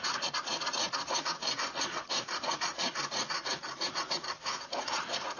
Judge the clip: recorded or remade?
remade